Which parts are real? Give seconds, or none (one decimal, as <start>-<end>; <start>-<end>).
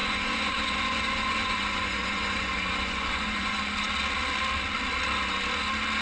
3.6-6.0